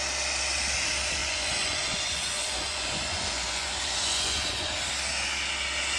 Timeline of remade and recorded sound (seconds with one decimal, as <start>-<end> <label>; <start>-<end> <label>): 0.0-1.2 recorded; 1.2-4.8 remade; 4.8-6.0 recorded